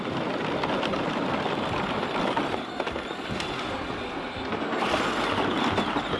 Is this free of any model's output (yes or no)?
yes